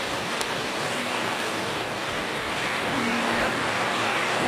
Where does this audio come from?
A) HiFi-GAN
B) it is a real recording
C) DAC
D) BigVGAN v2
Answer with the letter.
C